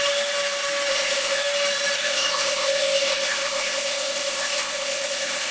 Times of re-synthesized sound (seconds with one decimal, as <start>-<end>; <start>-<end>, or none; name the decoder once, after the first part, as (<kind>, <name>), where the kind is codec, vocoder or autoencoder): 0.9-1.4 (codec, ZipCodec); 2.0-5.5